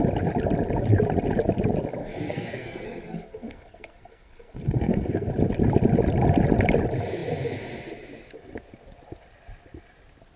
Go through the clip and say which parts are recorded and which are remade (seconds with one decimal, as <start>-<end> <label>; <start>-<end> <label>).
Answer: 0.0-2.0 recorded; 2.0-5.3 remade; 5.3-10.4 recorded